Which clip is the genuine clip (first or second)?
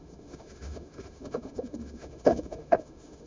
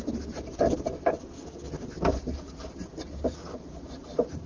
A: second